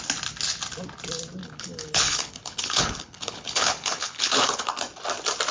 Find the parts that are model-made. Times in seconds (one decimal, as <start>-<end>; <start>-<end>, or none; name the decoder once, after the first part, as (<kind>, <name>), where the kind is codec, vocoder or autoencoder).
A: 1.4-4.7 (codec, HILCodec)